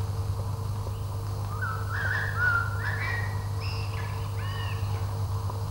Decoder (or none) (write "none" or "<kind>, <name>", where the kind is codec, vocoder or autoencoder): none